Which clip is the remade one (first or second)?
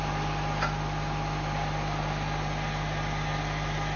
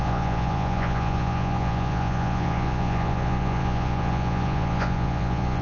second